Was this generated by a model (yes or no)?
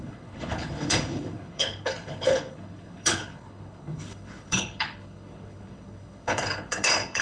yes